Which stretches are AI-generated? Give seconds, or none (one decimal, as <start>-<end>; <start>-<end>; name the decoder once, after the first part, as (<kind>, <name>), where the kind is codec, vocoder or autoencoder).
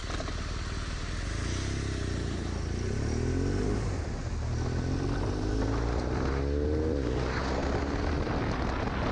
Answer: none